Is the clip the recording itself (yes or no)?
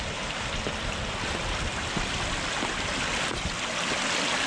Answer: yes